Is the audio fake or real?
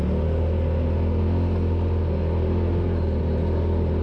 real